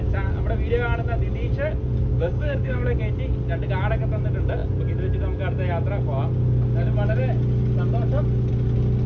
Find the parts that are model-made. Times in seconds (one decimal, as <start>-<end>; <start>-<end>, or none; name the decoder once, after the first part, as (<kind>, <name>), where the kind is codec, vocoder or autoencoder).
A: 2.1-3.0 (codec, DAC)